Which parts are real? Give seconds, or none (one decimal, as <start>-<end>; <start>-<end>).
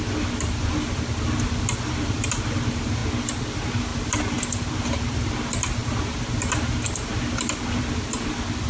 0.0-8.7